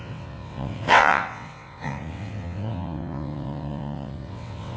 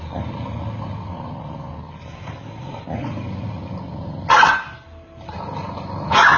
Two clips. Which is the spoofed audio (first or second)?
first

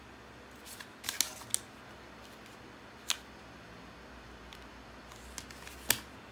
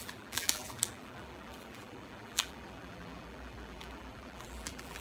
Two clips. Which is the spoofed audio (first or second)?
second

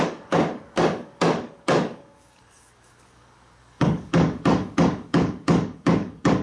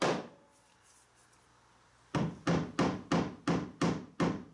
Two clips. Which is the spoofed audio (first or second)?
first